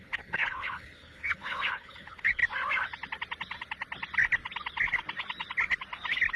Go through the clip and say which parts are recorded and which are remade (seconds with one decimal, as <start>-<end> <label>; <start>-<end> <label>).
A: 0.0-2.4 remade; 2.4-6.4 recorded